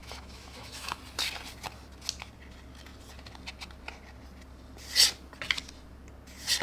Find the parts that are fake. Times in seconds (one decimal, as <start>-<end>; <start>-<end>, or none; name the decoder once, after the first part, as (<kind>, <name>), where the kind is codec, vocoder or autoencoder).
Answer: 0.0-1.0 (autoencoder, DAC-VAE)